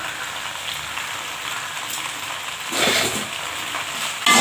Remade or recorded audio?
recorded